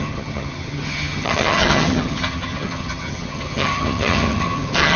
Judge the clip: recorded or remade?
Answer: remade